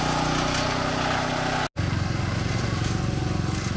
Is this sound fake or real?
real